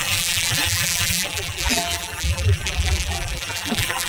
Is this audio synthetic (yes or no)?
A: yes